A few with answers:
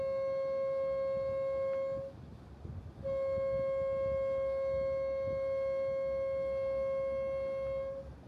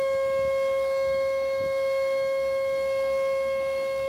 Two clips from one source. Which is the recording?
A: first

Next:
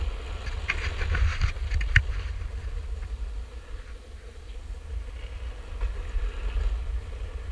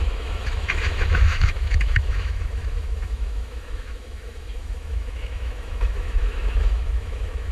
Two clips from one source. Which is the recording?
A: first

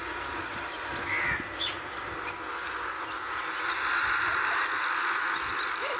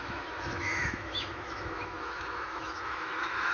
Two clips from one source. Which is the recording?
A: first